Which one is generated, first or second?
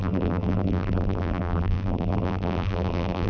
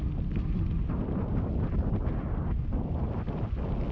first